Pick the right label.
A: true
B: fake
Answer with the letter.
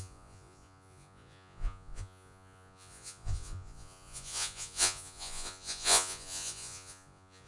B